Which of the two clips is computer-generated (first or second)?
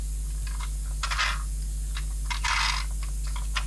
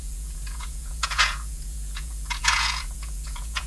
second